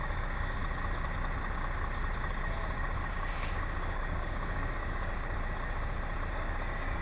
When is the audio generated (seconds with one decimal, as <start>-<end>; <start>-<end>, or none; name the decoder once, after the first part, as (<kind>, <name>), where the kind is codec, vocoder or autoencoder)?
0.0-0.6 (codec, DAC); 3.1-5.1; 6.3-7.0